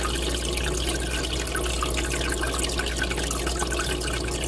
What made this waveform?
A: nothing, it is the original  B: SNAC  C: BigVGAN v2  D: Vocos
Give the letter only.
A